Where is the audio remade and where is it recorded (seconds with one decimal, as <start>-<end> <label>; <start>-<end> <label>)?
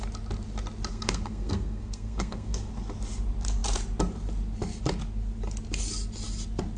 0.0-0.9 recorded; 0.9-2.7 remade; 2.7-6.8 recorded